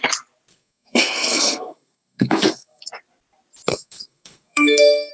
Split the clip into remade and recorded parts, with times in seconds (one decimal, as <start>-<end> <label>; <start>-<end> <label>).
0.0-0.5 recorded; 0.5-2.8 remade; 2.8-3.7 recorded; 3.7-5.1 remade